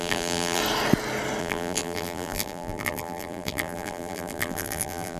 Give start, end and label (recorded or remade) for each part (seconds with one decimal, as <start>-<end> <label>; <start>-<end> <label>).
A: 0.0-0.6 remade; 0.6-1.4 recorded; 1.4-5.2 remade